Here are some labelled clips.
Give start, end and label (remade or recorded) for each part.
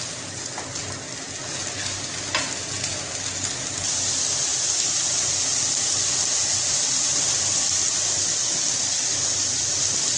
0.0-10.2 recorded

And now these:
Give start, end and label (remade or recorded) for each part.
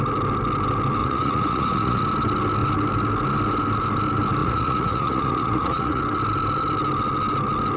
0.0-1.0 recorded; 1.0-2.0 remade; 2.0-4.4 recorded; 4.4-6.0 remade; 6.0-7.8 recorded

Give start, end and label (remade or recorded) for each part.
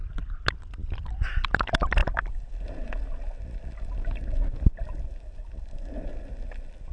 0.0-6.9 recorded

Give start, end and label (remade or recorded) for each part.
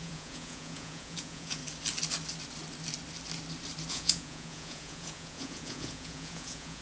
0.0-1.6 remade; 1.6-3.9 recorded; 3.9-6.8 remade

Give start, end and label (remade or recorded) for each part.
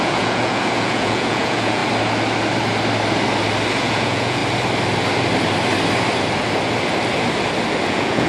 0.0-1.8 remade; 1.8-3.7 recorded; 3.7-4.4 remade; 4.4-7.9 recorded; 7.9-8.3 remade